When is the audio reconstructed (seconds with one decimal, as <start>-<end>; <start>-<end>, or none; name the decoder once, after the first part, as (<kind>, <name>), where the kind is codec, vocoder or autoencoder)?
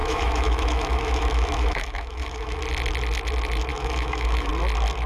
0.0-2.6 (autoencoder, DAC-VAE); 3.7-4.5